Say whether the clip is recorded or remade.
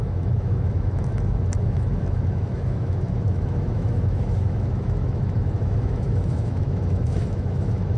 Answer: remade